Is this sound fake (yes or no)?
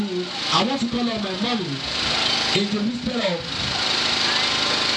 no